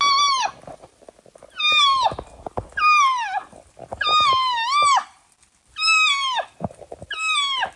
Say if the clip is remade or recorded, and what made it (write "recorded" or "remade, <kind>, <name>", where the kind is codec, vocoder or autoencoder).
recorded